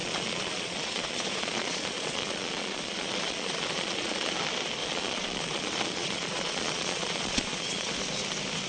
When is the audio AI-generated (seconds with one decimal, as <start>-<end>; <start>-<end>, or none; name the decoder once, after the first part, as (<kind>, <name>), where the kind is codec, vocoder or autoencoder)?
0.0-4.3 (vocoder, Vocos); 4.8-7.9